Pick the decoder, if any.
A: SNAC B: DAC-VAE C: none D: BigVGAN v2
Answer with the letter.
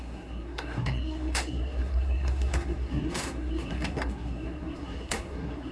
A